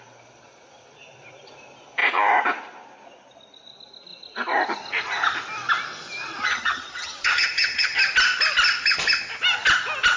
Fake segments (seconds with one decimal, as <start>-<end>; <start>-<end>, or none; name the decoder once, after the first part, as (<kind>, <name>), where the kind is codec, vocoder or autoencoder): 6.5-8.0 (vocoder, HiFi-GAN)